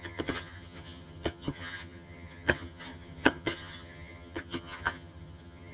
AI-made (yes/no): yes